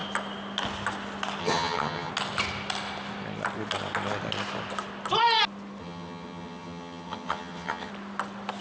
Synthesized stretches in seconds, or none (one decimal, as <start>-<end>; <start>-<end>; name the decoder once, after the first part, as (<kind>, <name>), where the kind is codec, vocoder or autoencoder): 1.4-2.1 (vocoder, HiFi-GAN); 5.8-7.9